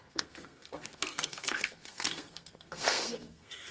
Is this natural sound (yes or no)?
no